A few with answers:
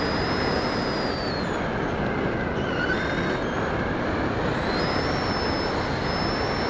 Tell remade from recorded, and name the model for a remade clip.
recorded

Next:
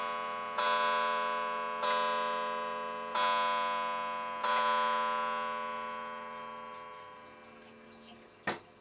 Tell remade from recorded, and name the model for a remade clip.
recorded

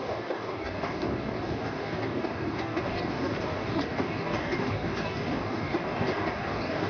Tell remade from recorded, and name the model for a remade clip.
remade, codec, DAC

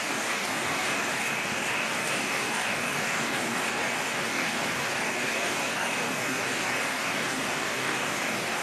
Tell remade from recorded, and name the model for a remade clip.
remade, codec, DAC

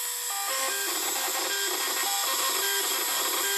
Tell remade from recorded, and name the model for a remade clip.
recorded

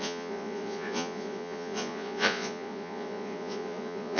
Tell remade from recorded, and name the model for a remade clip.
remade, vocoder, Vocos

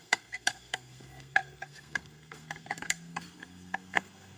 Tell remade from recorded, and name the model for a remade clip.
remade, codec, SNAC